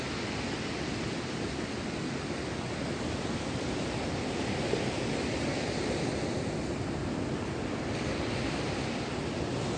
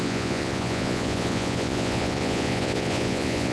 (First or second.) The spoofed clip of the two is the second